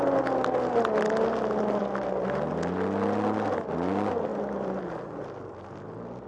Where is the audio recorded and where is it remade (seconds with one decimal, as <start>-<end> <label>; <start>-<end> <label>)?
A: 0.0-6.3 recorded